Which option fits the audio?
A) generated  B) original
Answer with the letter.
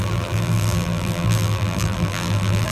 A